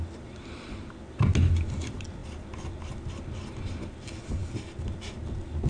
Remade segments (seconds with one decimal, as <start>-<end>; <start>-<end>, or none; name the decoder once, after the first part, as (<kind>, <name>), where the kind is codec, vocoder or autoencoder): none